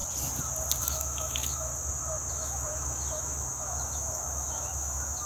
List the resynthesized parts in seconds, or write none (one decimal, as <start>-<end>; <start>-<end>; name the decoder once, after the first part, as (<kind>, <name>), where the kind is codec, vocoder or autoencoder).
0.8-1.7 (autoencoder, DAC-VAE); 2.3-5.3